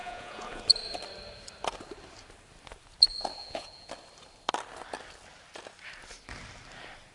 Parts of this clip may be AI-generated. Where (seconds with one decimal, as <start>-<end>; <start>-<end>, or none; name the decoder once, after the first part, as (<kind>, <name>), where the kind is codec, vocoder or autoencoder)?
0.0-0.6 (vocoder, Vocos); 3.4-3.9